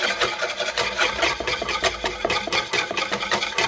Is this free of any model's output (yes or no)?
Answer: yes